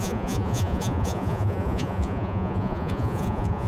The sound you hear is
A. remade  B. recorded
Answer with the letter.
A